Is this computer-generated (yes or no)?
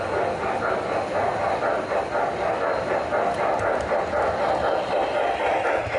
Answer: no